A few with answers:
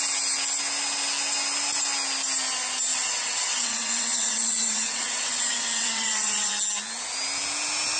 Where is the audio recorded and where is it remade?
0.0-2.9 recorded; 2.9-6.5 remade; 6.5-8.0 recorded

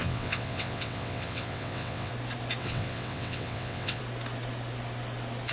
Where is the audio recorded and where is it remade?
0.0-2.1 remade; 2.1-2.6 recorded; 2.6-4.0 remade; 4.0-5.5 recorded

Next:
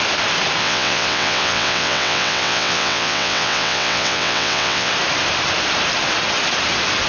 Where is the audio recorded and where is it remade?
0.0-0.6 recorded; 0.6-4.9 remade; 4.9-7.1 recorded

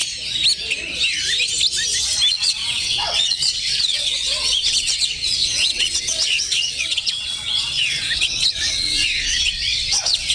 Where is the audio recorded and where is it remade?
0.0-2.3 recorded; 2.3-10.3 remade